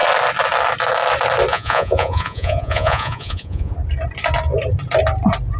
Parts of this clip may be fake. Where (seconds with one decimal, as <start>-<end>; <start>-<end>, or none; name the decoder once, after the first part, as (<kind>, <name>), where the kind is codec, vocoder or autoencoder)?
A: 1.5-3.7 (vocoder, Vocos)